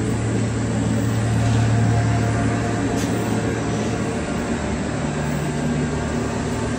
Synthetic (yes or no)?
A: no